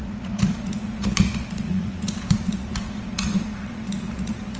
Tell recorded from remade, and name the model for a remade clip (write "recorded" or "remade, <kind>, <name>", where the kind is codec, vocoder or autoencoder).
remade, vocoder, Vocos